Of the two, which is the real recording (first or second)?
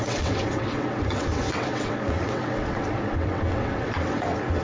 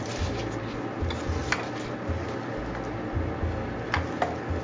second